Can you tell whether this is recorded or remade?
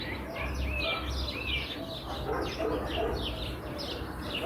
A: recorded